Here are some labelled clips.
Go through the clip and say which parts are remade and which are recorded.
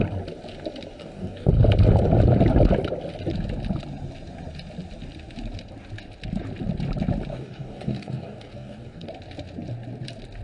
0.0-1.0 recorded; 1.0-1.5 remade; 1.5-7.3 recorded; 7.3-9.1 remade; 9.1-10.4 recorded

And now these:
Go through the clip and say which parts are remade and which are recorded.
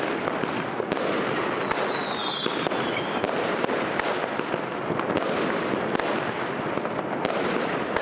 0.0-8.0 recorded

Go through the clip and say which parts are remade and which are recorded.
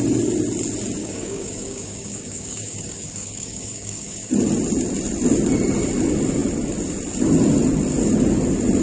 0.0-1.0 recorded; 1.0-4.3 remade; 4.3-8.8 recorded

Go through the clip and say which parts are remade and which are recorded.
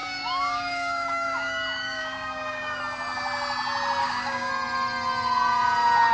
0.0-2.8 remade; 2.8-4.0 recorded; 4.0-4.5 remade; 4.5-6.1 recorded